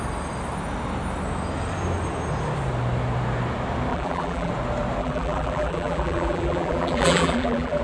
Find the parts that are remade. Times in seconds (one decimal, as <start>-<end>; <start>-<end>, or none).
3.9-4.5; 5.0-7.8